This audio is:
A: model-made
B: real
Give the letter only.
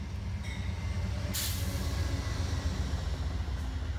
B